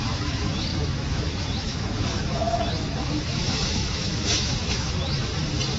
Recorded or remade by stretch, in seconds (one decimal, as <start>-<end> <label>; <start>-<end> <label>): 0.0-5.3 remade; 5.3-5.8 recorded

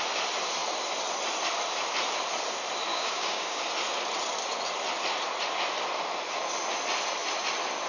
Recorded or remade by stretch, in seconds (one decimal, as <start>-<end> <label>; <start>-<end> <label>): 0.0-2.9 recorded; 2.9-3.6 remade; 3.6-7.9 recorded

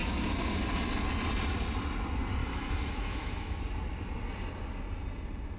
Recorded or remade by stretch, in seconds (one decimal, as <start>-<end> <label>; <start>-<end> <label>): 0.0-2.4 recorded; 2.4-3.6 remade; 3.6-5.6 recorded

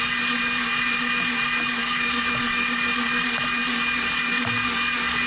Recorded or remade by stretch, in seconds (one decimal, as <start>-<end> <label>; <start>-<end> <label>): 0.0-1.8 recorded; 1.8-2.3 remade; 2.3-5.3 recorded

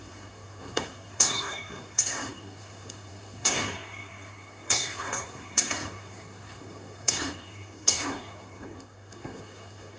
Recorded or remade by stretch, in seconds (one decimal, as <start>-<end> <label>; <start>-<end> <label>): 0.0-10.0 remade

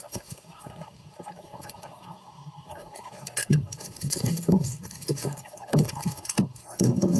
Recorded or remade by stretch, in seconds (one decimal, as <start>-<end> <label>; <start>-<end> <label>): 0.0-7.2 remade

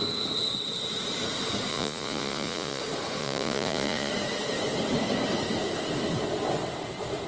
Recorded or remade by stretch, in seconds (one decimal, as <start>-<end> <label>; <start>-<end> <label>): 0.0-1.7 recorded; 1.7-2.8 remade; 2.8-3.2 recorded; 3.2-4.1 remade; 4.1-7.3 recorded

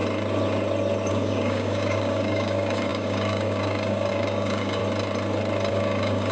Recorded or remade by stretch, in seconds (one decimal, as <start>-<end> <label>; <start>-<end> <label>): 0.0-1.1 recorded; 1.1-4.8 remade; 4.8-5.7 recorded; 5.7-6.3 remade